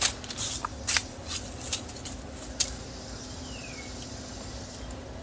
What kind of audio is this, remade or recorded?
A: remade